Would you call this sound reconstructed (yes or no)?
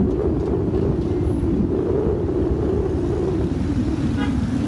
no